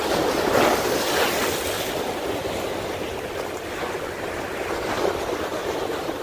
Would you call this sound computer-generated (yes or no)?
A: no